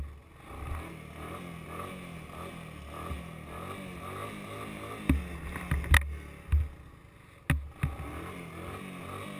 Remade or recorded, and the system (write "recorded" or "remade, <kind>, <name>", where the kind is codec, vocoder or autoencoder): recorded